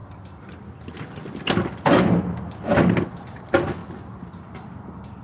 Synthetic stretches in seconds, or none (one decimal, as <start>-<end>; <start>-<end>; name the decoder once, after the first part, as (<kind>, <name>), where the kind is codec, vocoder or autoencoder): 3.1-3.8 (vocoder, BigVGAN v2)